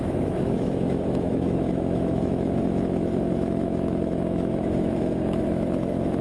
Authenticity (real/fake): fake